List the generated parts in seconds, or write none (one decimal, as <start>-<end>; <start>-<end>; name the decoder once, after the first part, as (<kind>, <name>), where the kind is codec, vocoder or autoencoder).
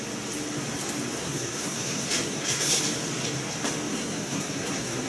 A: 1.2-2.8 (codec, SNAC); 3.9-5.1